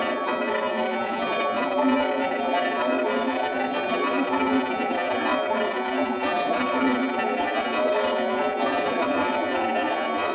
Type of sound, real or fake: fake